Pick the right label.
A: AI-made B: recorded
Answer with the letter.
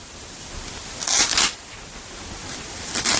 B